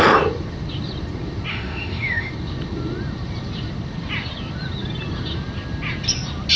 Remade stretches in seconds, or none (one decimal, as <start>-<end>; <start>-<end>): 1.5-2.3